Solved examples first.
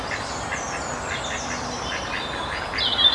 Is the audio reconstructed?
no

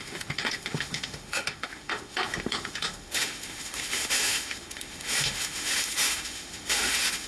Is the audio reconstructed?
yes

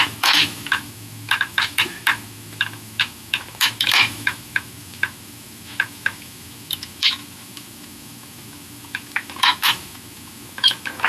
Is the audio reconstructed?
yes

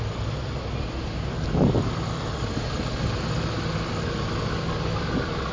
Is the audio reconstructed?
no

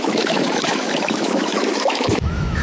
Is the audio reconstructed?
yes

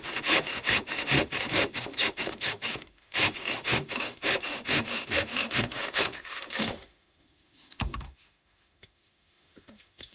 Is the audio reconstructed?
yes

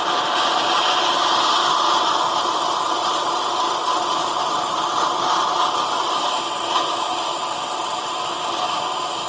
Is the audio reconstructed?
no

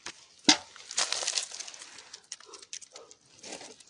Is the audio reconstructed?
no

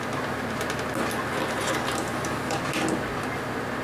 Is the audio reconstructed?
no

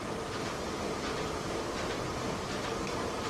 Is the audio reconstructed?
no